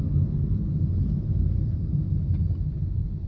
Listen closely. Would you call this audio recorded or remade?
recorded